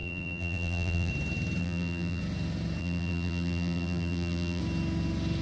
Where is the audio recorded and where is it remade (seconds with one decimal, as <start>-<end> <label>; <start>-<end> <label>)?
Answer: 0.0-1.1 remade; 1.1-1.6 recorded; 1.6-2.2 remade; 2.2-2.8 recorded; 2.8-4.6 remade; 4.6-5.4 recorded